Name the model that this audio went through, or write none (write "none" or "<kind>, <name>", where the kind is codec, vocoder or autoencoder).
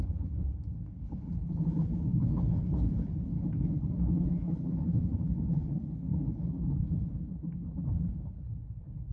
codec, HILCodec